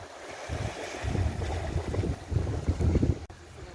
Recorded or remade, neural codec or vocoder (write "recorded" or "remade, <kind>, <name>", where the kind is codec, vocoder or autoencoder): recorded